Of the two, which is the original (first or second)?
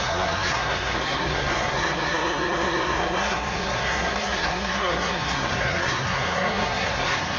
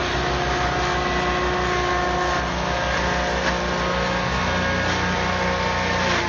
second